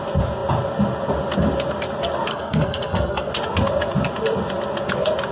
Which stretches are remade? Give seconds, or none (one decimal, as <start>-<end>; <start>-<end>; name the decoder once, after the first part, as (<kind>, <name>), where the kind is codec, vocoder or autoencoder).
2.3-3.3 (codec, SNAC)